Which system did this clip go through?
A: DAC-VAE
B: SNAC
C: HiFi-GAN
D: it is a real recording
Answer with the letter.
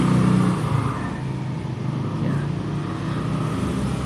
D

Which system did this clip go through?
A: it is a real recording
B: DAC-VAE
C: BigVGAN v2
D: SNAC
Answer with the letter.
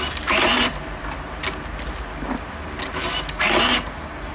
A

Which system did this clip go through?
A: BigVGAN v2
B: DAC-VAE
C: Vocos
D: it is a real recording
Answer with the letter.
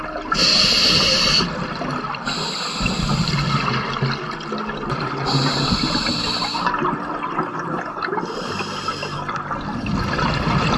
D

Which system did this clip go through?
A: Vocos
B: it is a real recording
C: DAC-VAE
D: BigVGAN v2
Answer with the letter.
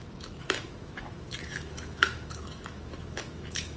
C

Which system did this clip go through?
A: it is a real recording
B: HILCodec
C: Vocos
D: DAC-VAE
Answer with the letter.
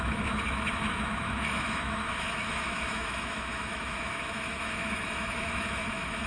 D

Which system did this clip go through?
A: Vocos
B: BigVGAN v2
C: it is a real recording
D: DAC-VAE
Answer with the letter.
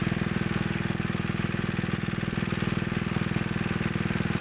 C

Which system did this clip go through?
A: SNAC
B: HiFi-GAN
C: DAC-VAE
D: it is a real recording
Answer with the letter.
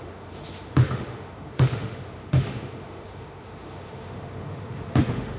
C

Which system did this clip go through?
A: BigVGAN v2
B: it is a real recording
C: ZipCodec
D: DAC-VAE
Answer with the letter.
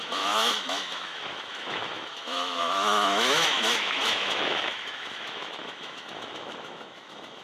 D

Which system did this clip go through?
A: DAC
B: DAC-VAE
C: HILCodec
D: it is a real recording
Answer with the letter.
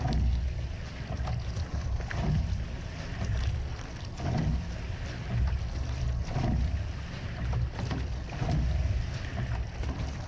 D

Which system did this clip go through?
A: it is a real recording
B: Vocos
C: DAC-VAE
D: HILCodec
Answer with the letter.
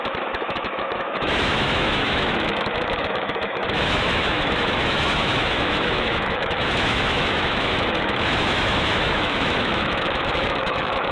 C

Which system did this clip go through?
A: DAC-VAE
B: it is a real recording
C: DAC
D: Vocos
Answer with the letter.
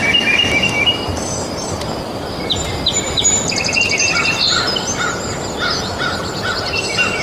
B